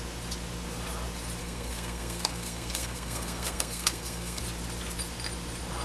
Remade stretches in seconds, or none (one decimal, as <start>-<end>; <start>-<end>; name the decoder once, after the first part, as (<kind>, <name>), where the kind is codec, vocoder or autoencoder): 1.4-4.4 (codec, SNAC)